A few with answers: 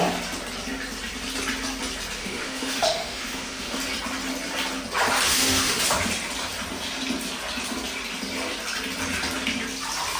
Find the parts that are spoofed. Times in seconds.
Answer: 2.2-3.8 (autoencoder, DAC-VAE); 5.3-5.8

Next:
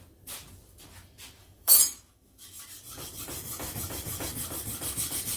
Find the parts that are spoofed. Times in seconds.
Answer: 1.4-2.6 (autoencoder, DAC-VAE)

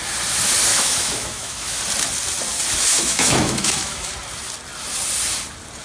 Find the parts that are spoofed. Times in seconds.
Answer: 0.7-1.8 (autoencoder, DAC-VAE); 2.9-4.1

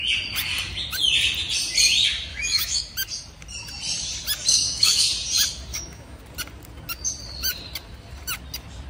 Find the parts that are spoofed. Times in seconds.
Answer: 2.3-2.8 (autoencoder, DAC-VAE); 4.5-5.1; 5.7-6.2